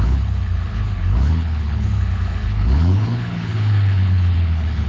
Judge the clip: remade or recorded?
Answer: remade